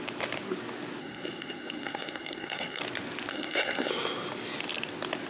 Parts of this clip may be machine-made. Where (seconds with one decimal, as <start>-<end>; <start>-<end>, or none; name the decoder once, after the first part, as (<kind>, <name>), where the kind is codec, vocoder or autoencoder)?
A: 1.0-2.8 (codec, SNAC); 3.3-3.9